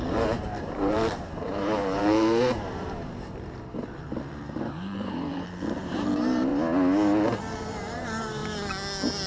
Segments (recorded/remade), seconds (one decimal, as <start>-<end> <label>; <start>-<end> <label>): 0.0-6.5 remade; 6.5-7.4 recorded; 7.4-8.4 remade; 8.4-9.3 recorded